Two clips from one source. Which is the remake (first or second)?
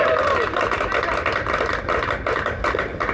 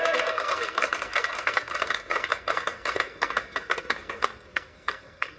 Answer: second